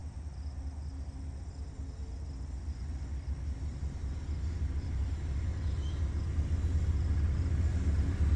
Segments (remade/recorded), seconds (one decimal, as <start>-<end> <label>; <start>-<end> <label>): 0.0-8.4 recorded

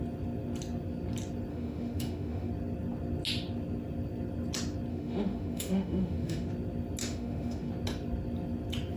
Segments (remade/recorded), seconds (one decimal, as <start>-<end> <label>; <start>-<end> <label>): 0.0-1.5 recorded; 1.5-2.5 remade; 2.5-4.9 recorded; 4.9-6.5 remade; 6.5-7.0 recorded; 7.0-7.7 remade; 7.7-9.0 recorded

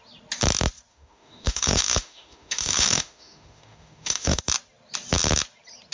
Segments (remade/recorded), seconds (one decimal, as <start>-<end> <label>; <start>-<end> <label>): 0.0-0.9 recorded; 0.9-4.4 remade; 4.4-5.9 recorded

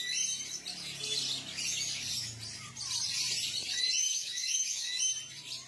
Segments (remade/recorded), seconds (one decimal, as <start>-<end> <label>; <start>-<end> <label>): 0.0-4.0 recorded; 4.0-5.0 remade; 5.0-5.7 recorded

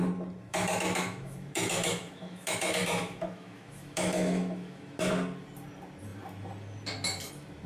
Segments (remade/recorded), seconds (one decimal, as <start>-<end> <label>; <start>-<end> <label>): 0.0-0.5 recorded; 0.5-5.1 remade; 5.1-7.7 recorded